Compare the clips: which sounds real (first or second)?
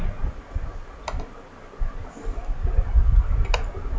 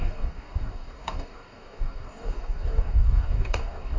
first